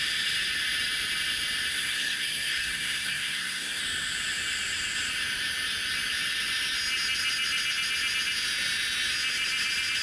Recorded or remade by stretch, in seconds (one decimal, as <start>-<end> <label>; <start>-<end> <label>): 0.0-1.7 recorded; 1.7-3.8 remade; 3.8-10.0 recorded